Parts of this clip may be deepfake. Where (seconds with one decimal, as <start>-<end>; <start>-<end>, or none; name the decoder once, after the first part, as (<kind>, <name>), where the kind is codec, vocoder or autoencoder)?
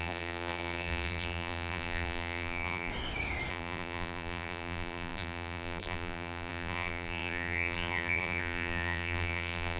0.0-2.9 (vocoder, BigVGAN v2); 3.5-9.8